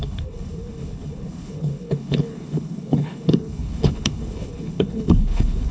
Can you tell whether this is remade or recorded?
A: remade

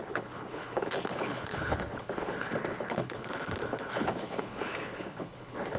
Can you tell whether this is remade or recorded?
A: remade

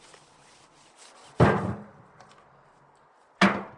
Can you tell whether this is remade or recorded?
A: recorded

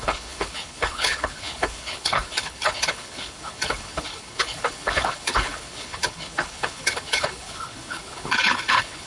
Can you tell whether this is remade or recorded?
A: remade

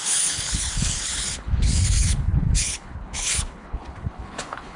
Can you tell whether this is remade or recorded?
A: remade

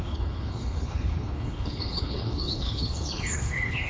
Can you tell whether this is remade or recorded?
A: remade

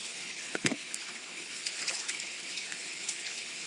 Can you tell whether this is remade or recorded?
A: remade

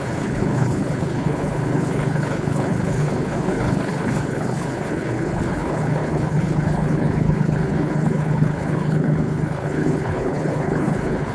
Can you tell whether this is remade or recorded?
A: remade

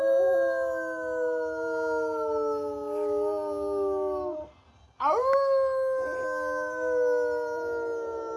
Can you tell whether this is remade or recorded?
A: recorded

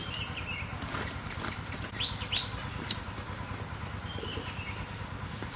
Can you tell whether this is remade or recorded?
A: recorded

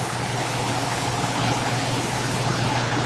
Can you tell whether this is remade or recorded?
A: remade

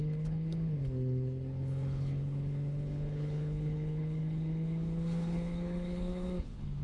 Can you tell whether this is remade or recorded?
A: remade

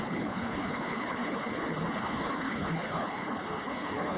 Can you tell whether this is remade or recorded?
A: remade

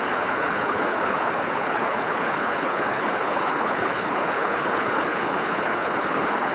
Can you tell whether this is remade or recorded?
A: remade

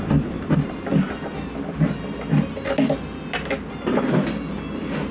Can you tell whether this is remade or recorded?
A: recorded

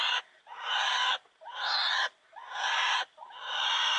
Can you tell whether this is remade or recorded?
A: recorded